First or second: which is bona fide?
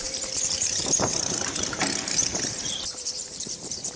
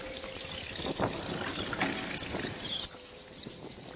second